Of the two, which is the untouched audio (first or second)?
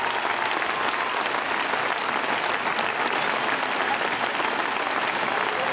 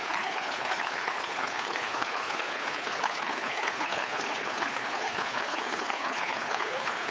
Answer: first